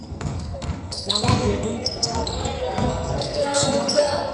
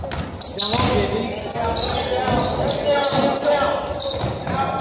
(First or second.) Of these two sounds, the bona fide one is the second